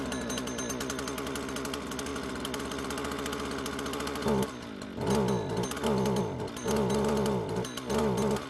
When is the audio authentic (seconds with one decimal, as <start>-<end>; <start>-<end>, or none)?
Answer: 0.0-8.5